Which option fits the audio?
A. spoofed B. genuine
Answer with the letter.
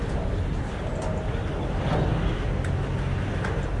B